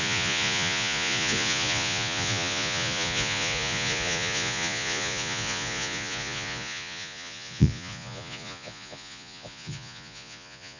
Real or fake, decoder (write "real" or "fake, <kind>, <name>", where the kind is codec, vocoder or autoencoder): fake, vocoder, Vocos